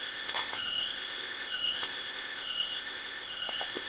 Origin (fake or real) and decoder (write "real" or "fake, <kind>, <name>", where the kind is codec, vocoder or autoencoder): fake, codec, ZipCodec